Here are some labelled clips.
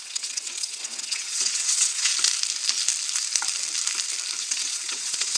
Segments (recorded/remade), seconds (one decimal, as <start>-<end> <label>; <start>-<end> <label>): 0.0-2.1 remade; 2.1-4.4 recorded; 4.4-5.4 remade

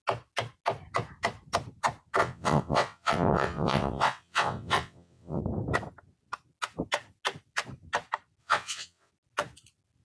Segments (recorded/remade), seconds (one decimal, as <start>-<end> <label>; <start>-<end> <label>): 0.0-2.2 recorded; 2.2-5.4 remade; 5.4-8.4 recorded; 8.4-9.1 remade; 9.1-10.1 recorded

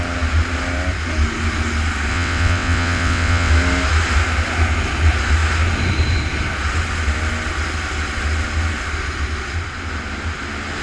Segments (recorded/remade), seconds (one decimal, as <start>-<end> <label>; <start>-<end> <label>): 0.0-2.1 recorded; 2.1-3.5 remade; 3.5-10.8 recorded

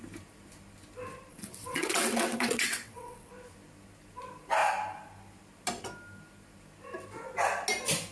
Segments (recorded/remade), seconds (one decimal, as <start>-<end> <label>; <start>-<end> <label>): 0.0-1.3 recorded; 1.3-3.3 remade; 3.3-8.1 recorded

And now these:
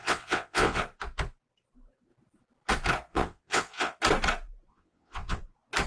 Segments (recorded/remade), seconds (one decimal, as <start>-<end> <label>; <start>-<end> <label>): 0.0-0.8 remade; 0.8-3.1 recorded; 3.1-4.0 remade; 4.0-4.7 recorded; 4.7-5.4 remade; 5.4-5.9 recorded

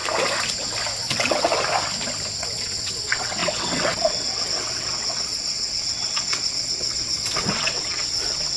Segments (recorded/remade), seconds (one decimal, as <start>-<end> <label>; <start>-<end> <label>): 0.0-1.0 recorded; 1.0-1.5 remade; 1.5-2.4 recorded; 2.4-8.6 remade